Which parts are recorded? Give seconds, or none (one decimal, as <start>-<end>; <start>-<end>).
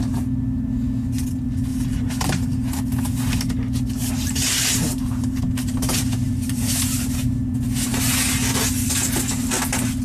0.0-1.7; 2.8-4.0; 7.5-10.0